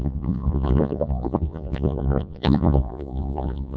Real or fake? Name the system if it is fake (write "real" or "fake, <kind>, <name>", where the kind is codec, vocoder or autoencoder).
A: fake, vocoder, Vocos